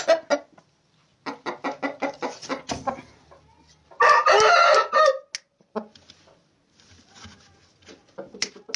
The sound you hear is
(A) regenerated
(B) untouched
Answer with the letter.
B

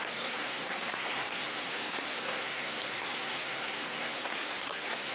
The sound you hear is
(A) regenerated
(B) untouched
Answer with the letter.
A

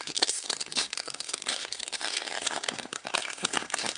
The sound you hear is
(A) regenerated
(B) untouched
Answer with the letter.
A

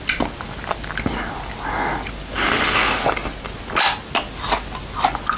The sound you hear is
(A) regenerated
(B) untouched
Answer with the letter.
B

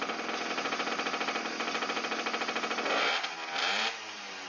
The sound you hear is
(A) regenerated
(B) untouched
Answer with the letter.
B